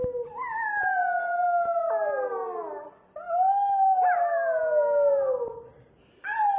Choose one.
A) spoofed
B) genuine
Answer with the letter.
B